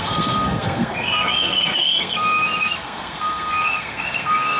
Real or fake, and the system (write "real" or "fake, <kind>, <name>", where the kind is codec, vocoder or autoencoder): fake, codec, SNAC